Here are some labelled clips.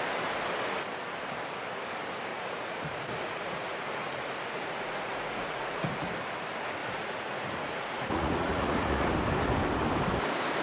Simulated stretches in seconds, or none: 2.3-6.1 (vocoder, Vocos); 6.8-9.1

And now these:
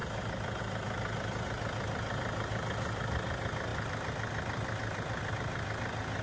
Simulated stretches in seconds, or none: 3.7-5.3 (vocoder, BigVGAN v2)

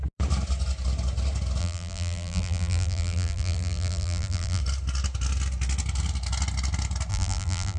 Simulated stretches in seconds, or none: 1.6-4.6 (vocoder, BigVGAN v2); 7.1-7.8

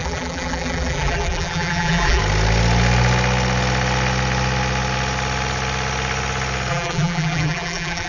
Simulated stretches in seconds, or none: 0.0-2.2 (vocoder, BigVGAN v2); 6.7-8.1

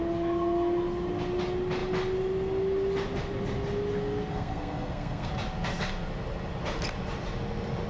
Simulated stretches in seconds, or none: 4.3-5.3 (codec, SNAC)

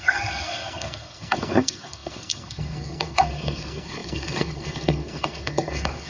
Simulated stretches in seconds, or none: 0.0-6.1 (codec, SNAC)

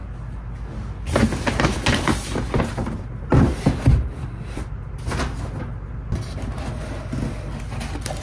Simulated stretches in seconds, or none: none